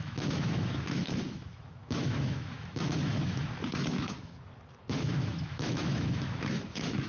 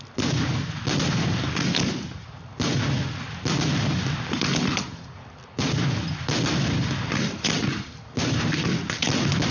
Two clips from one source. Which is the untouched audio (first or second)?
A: second